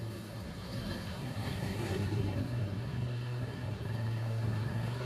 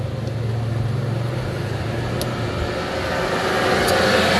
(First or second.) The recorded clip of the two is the second